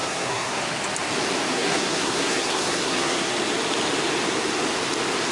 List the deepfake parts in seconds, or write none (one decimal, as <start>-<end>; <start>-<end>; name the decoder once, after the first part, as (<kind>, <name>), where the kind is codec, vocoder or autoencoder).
0.0-0.6 (codec, SNAC); 1.5-3.3